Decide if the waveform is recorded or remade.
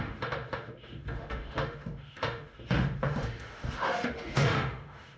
remade